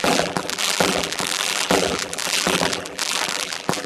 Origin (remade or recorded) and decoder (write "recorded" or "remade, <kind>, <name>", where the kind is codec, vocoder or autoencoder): remade, vocoder, BigVGAN v2